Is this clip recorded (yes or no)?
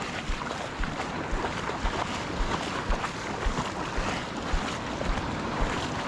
yes